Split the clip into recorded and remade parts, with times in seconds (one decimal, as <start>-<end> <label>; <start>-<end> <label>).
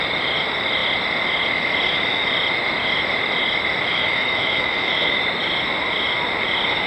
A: 0.0-3.9 recorded; 3.9-5.2 remade; 5.2-6.9 recorded